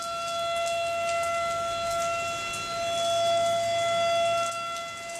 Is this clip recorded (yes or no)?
yes